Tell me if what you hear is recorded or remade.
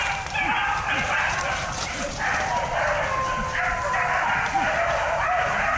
recorded